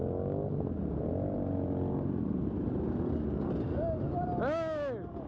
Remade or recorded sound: recorded